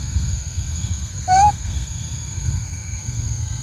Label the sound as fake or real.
fake